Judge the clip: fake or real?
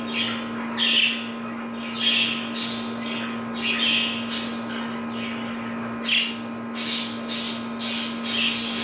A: real